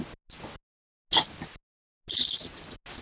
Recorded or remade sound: recorded